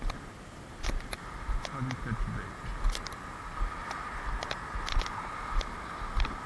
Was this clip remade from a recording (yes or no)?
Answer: no